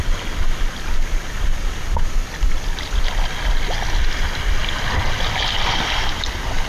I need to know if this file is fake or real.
real